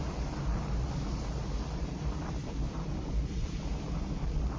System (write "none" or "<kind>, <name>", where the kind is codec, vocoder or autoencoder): vocoder, BigVGAN v2